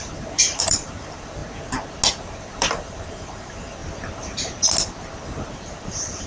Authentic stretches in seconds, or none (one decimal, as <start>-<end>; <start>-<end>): 1.4-2.4; 3.8-5.5